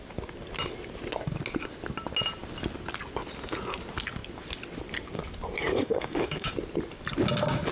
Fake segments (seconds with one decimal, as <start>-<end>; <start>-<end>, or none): 5.6-6.5